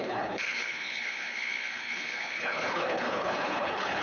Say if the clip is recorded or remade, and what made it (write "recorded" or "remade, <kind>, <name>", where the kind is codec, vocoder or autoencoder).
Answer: remade, codec, HILCodec